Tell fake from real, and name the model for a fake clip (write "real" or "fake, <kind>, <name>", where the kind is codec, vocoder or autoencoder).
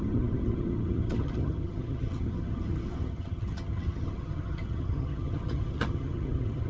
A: fake, vocoder, HiFi-GAN